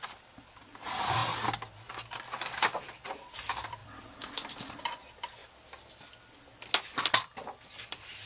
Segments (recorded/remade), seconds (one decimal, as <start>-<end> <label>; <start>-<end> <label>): 0.0-1.2 remade; 1.2-3.1 recorded; 3.1-5.4 remade; 5.4-7.2 recorded; 7.2-8.3 remade